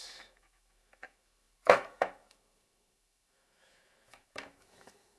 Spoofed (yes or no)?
yes